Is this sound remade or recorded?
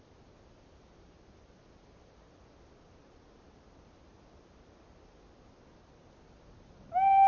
recorded